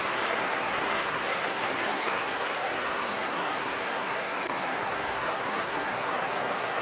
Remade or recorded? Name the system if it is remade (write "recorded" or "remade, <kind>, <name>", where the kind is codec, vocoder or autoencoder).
remade, codec, SNAC